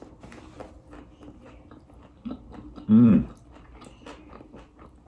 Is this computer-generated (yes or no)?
no